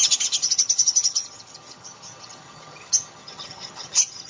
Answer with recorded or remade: remade